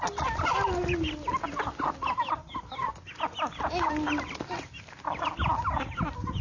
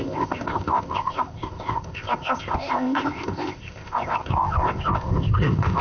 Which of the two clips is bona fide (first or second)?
first